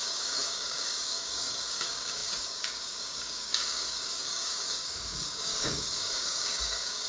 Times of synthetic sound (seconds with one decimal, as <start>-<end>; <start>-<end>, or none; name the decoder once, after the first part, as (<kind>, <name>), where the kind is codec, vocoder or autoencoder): 0.0-7.1 (codec, DAC)